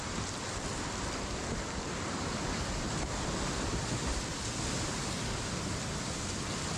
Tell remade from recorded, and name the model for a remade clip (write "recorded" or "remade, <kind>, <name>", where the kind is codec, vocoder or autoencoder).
recorded